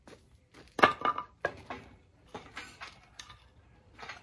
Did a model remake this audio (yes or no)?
yes